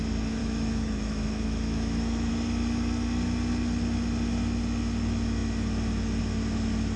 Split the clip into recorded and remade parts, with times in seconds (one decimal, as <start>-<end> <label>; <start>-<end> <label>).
0.0-0.4 recorded; 0.4-2.3 remade; 2.3-7.0 recorded